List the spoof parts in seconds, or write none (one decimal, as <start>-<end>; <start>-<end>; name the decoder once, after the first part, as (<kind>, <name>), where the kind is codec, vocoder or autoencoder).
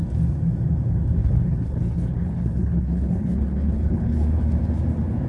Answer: 1.2-4.4 (codec, HILCodec)